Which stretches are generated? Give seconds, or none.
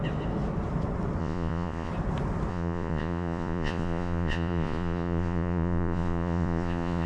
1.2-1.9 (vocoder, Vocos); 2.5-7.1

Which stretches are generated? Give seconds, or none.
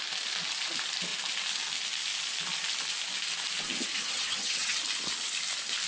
3.9-4.8 (vocoder, HiFi-GAN)